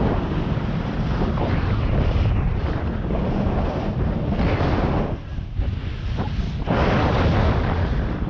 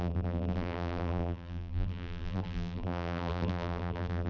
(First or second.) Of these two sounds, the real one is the first